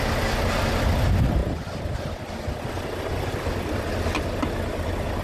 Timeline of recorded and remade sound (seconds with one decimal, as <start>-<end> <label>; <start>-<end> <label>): 0.0-5.2 recorded